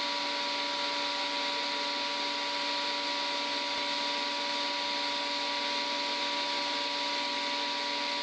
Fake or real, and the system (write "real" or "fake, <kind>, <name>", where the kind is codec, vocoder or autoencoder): real